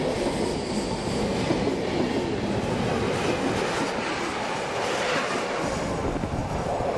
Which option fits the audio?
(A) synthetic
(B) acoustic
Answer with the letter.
B